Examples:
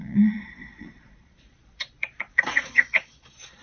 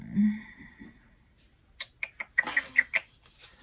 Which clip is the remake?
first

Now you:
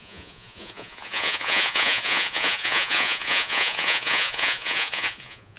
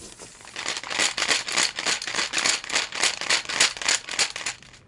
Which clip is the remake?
first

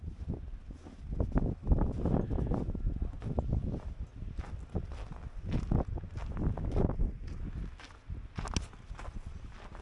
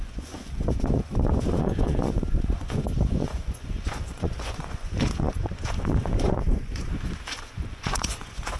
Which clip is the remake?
second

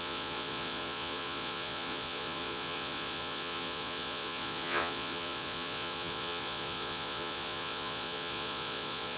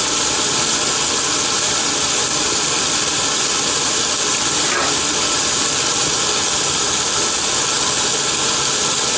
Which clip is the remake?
first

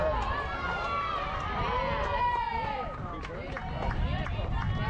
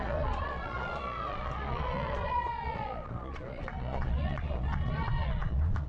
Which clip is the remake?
second